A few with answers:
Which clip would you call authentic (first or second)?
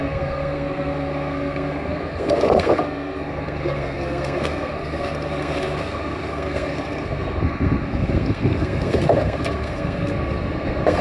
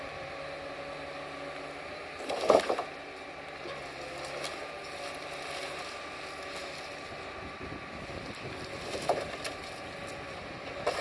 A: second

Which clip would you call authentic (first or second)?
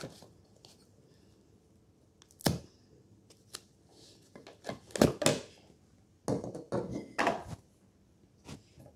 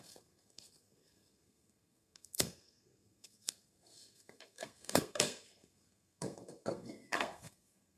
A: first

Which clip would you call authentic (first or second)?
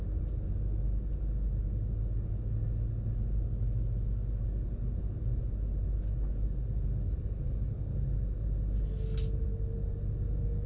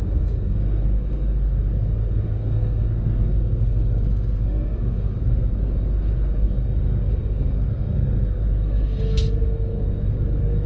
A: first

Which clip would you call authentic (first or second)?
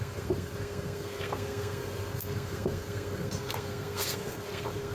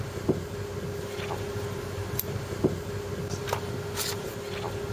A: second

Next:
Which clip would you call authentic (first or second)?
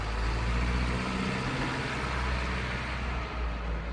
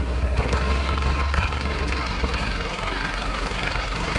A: first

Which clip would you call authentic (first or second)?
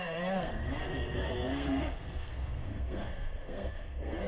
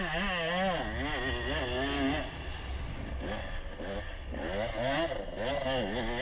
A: second